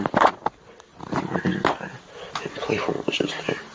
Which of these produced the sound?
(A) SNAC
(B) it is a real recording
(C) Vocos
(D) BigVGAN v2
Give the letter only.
B